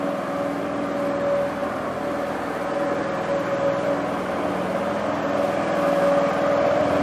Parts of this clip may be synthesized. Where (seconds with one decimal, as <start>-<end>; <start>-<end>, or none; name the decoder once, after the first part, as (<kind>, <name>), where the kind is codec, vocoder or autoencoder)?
none